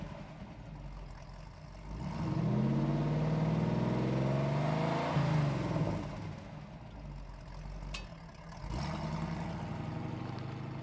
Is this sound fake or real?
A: real